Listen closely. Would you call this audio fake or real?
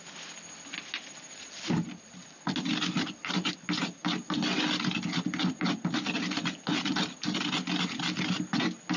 real